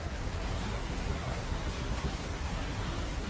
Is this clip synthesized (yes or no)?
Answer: yes